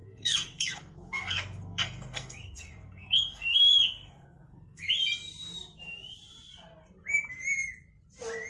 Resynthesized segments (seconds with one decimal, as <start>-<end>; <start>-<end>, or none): 0.0-4.9